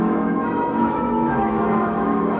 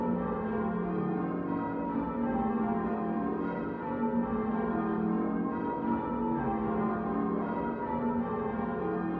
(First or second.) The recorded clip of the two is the second